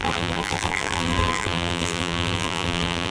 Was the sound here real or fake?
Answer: fake